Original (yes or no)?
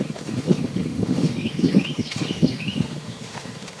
no